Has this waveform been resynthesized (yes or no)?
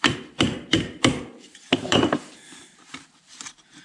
yes